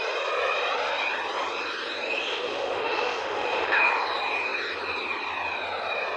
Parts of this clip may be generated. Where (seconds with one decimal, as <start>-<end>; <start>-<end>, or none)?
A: 2.3-3.9